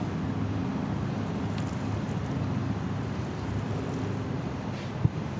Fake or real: real